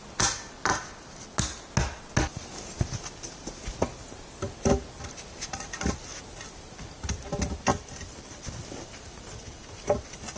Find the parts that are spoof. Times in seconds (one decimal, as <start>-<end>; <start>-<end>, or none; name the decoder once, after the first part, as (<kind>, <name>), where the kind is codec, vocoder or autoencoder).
7.7-10.4 (vocoder, BigVGAN v2)

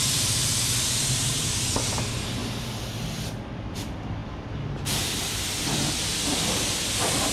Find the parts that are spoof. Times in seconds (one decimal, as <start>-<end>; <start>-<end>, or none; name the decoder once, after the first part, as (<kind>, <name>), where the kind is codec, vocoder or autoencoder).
0.0-2.4 (vocoder, BigVGAN v2); 3.1-7.3

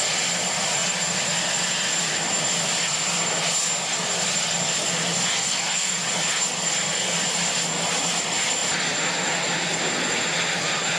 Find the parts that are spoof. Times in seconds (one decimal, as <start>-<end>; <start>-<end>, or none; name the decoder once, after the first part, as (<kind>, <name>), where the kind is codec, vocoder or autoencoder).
5.4-6.0 (codec, SNAC)

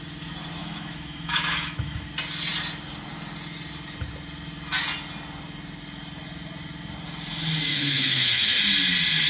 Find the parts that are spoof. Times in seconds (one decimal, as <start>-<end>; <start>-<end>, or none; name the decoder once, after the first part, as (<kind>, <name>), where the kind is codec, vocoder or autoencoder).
0.6-2.1 (autoencoder, DAC-VAE); 7.7-8.6

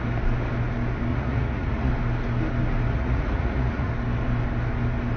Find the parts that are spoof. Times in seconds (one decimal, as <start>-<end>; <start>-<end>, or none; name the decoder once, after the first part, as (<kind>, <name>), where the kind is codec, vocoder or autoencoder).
1.1-1.9 (vocoder, Vocos); 2.9-3.9

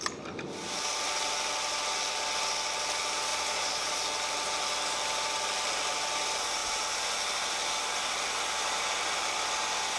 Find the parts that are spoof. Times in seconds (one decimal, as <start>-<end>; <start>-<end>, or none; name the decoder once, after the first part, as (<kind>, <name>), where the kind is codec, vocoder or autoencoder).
3.3-4.0 (vocoder, Vocos)

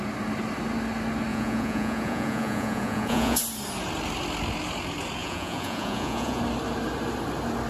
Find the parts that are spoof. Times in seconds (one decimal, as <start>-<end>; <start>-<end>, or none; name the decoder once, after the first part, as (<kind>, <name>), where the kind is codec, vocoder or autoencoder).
1.3-3.4 (vocoder, Vocos); 5.2-6.4

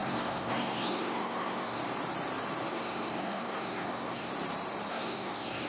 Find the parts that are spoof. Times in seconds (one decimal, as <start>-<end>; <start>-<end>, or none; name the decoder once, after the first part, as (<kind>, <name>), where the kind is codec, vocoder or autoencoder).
0.0-1.8 (codec, SNAC); 2.7-4.3; 4.9-5.7